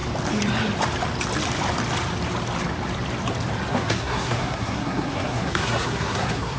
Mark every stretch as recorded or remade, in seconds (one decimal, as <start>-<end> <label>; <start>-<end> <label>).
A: 0.0-3.7 recorded; 3.7-6.6 remade